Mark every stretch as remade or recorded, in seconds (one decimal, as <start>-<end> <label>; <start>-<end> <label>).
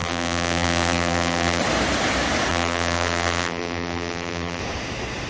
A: 0.0-1.6 remade; 1.6-2.5 recorded; 2.5-4.6 remade; 4.6-5.3 recorded